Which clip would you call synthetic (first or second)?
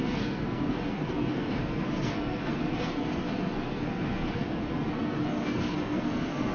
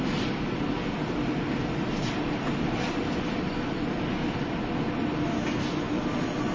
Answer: first